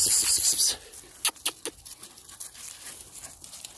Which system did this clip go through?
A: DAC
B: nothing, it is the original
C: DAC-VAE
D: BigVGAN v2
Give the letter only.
B